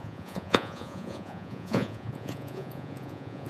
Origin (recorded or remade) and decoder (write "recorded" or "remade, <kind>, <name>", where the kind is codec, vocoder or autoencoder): remade, vocoder, Vocos